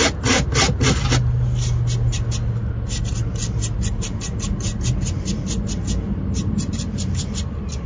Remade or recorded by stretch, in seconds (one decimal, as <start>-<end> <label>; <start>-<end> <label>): 0.0-7.9 recorded